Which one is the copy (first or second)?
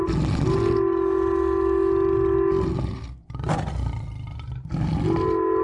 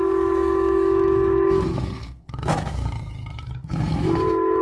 second